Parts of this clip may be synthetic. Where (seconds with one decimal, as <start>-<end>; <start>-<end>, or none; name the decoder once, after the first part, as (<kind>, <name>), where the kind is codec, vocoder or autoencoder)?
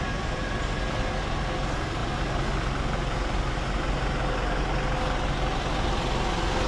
none